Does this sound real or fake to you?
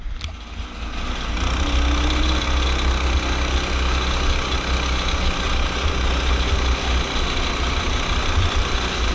real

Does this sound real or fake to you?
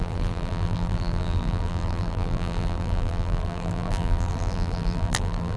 fake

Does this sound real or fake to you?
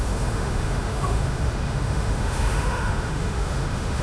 fake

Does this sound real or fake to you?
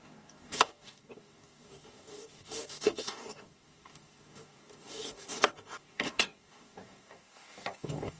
fake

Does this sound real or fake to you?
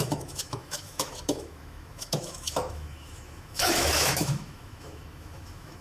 fake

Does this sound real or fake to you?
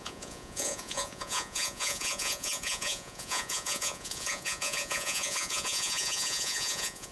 fake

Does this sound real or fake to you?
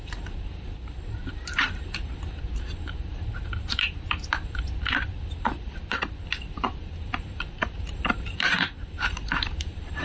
fake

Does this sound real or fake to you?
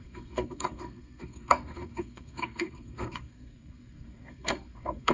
fake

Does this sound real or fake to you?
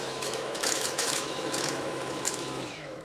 fake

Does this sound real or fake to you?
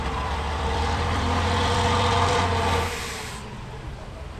fake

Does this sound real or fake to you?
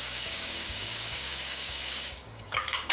fake